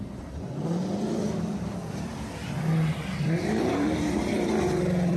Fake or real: fake